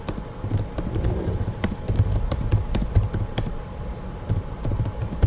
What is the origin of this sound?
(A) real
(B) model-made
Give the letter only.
B